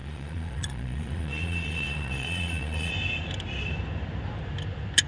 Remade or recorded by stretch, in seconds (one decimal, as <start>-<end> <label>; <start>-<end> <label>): 0.0-2.9 remade; 2.9-5.1 recorded